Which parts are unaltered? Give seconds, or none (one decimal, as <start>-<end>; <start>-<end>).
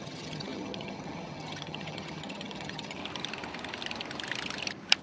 3.0-5.0